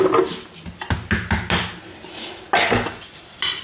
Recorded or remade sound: recorded